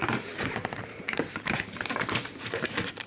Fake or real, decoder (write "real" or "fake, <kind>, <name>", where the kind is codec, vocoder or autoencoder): fake, vocoder, BigVGAN v2